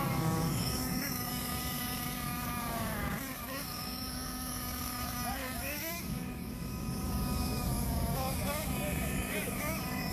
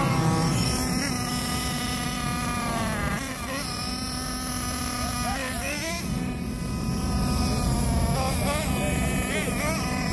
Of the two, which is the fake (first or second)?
first